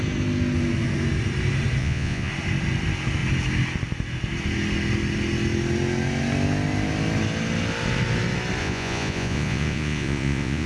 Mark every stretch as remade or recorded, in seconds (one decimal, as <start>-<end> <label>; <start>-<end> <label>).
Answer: 0.0-1.8 recorded; 1.8-2.3 remade; 2.3-8.6 recorded; 8.6-10.7 remade